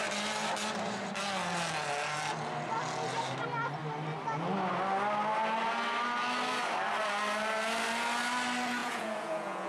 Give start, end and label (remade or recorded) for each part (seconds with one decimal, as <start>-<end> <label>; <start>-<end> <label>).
0.0-8.8 recorded; 8.8-9.7 remade

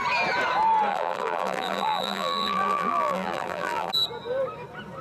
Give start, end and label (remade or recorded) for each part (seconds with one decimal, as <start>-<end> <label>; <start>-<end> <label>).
0.0-0.9 recorded; 0.9-3.9 remade; 3.9-5.0 recorded

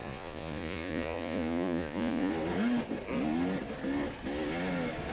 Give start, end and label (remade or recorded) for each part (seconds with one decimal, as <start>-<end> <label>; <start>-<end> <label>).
0.0-2.3 remade; 2.3-5.1 recorded

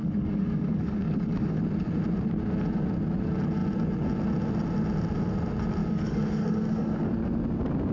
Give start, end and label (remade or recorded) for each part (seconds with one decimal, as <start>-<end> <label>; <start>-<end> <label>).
0.0-1.6 remade; 1.6-5.8 recorded; 5.8-7.1 remade; 7.1-7.9 recorded

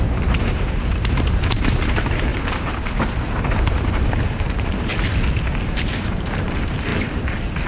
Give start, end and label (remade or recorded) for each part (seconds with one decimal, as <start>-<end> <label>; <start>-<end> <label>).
0.0-4.9 remade; 4.9-5.7 recorded; 5.7-6.9 remade; 6.9-7.7 recorded

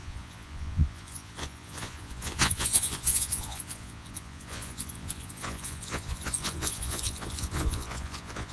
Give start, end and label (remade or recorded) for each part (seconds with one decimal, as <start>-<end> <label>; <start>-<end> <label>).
0.0-8.5 remade

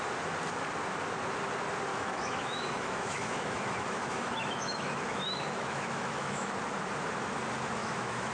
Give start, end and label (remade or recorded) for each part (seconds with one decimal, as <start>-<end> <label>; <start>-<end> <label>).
0.0-1.9 recorded; 1.9-6.5 remade; 6.5-7.8 recorded; 7.8-8.3 remade

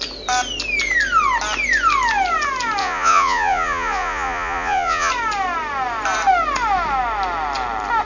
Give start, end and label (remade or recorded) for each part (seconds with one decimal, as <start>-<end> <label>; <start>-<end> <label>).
0.0-2.8 recorded; 2.8-5.1 remade; 5.1-8.0 recorded